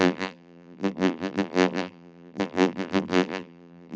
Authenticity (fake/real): fake